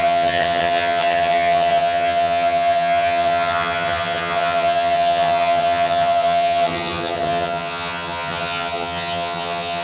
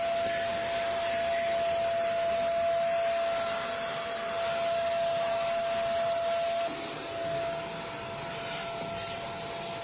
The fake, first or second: first